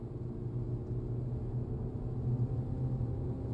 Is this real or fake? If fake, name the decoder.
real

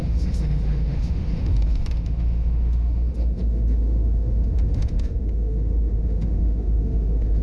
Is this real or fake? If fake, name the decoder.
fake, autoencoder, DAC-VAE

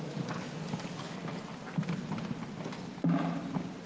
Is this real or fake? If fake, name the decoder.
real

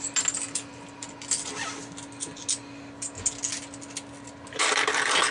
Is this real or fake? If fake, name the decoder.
real